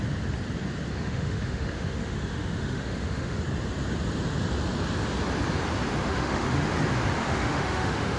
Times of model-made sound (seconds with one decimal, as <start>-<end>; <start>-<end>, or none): 0.9-3.4; 6.0-6.7; 7.2-8.2